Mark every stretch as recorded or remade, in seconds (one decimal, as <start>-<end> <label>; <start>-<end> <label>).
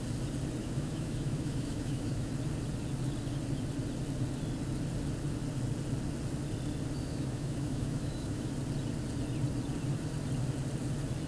0.0-0.6 recorded; 0.6-2.3 remade; 2.3-7.1 recorded; 7.1-8.5 remade; 8.5-11.3 recorded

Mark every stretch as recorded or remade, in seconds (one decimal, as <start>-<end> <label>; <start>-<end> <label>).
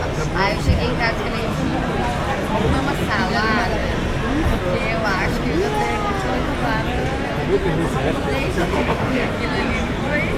0.0-8.6 recorded; 8.6-9.3 remade; 9.3-10.4 recorded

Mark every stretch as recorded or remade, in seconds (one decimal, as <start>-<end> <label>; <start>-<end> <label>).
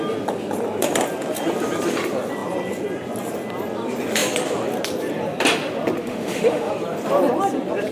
0.0-6.0 recorded; 6.0-6.7 remade; 6.7-7.9 recorded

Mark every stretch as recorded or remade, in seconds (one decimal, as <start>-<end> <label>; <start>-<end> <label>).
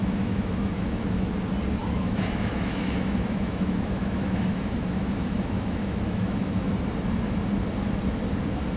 0.0-1.3 remade; 1.3-1.8 recorded; 1.8-6.7 remade; 6.7-8.8 recorded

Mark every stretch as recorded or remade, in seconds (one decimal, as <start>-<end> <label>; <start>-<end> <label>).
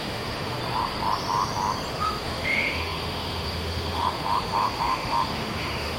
0.0-0.6 remade; 0.6-1.9 recorded; 1.9-6.0 remade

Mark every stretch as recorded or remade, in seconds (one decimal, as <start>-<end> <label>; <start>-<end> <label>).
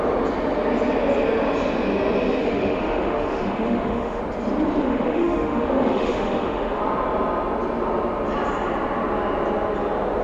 0.0-2.4 recorded; 2.4-4.2 remade; 4.2-4.8 recorded; 4.8-6.8 remade; 6.8-10.2 recorded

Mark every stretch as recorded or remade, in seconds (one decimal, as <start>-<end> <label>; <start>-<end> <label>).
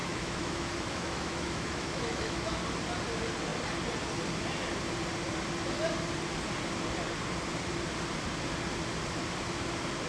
0.0-2.6 remade; 2.6-10.1 recorded